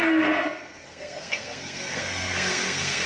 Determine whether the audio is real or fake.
fake